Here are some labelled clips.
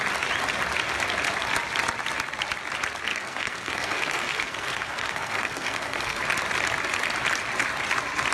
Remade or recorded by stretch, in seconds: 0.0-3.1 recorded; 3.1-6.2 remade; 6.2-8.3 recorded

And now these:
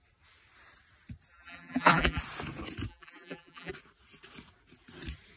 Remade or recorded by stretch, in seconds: 0.0-1.3 recorded; 1.3-2.2 remade; 2.2-2.9 recorded; 2.9-3.7 remade; 3.7-5.4 recorded